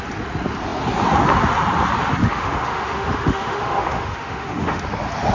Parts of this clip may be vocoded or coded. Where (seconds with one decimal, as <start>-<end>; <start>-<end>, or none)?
2.2-4.8